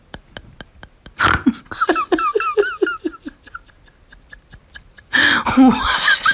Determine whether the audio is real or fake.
real